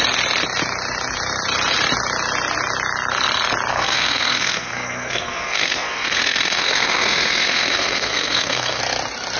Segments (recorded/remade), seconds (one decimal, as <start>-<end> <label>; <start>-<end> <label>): 0.0-3.7 recorded; 3.7-8.8 remade; 8.8-9.4 recorded